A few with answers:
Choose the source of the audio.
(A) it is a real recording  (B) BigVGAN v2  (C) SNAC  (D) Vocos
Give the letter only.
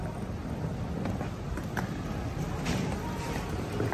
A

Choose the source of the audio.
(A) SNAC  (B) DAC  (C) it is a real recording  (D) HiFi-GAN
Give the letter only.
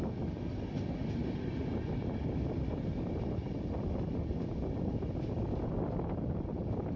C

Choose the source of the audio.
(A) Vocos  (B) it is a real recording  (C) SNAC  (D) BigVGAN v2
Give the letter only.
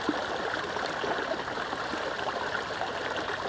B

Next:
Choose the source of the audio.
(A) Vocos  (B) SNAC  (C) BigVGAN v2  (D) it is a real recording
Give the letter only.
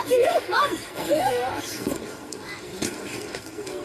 B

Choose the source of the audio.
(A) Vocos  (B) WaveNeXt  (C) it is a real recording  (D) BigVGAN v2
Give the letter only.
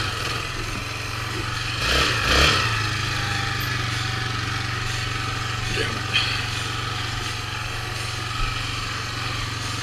C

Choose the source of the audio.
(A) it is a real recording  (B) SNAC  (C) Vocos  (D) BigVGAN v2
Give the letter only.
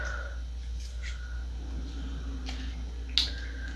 A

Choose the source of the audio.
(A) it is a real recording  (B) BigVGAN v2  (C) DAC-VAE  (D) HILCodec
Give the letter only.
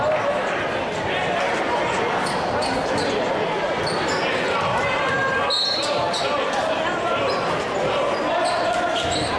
A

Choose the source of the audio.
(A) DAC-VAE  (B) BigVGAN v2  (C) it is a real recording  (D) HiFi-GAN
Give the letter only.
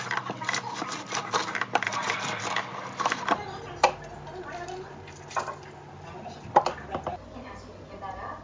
C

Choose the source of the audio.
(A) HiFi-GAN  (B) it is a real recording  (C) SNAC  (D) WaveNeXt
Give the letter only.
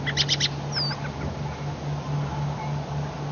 B